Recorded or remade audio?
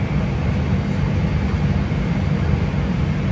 recorded